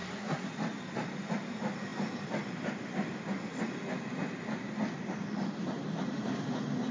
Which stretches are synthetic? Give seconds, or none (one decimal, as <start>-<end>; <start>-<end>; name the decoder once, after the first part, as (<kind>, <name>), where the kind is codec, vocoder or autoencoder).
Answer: 0.0-0.5 (codec, SNAC)